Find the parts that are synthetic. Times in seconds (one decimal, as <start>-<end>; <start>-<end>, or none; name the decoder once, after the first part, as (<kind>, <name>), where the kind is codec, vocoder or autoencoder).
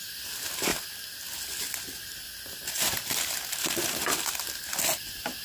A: none